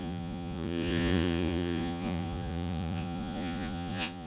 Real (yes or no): no